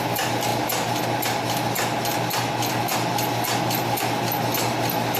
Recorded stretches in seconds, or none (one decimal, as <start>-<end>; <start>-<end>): 0.0-5.2